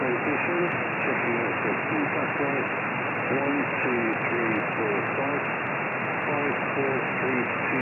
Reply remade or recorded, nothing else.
recorded